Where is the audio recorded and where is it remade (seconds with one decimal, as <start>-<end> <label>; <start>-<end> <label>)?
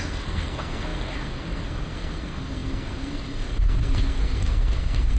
0.0-5.2 remade